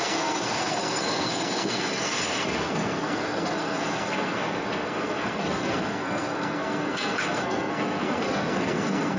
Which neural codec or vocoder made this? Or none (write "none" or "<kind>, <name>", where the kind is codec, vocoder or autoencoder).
codec, SNAC